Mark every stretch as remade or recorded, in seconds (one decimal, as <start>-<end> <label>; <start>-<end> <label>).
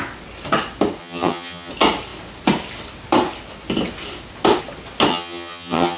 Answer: 0.0-1.0 recorded; 1.0-1.7 remade; 1.7-5.1 recorded; 5.1-6.0 remade